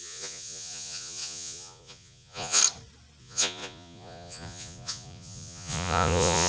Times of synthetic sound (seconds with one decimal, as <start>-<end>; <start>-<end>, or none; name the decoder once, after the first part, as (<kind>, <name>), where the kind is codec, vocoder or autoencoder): 0.0-2.6 (vocoder, Vocos); 3.2-6.5